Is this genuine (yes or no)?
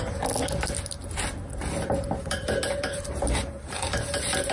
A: yes